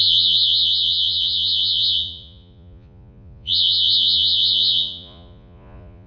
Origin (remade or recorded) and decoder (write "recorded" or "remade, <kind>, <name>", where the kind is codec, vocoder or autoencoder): remade, vocoder, Vocos